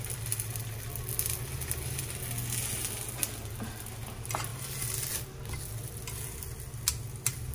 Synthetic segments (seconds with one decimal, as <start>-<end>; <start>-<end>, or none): none